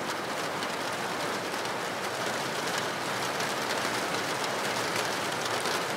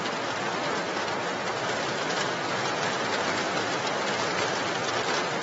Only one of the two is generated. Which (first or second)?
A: first